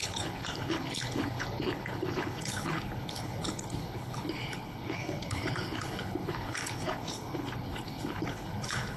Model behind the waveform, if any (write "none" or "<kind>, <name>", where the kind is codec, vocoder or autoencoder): codec, HILCodec